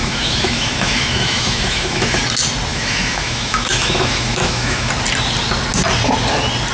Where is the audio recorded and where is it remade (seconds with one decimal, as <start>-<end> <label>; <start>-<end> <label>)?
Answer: 0.0-2.2 remade; 2.2-2.7 recorded; 2.7-4.9 remade; 4.9-6.7 recorded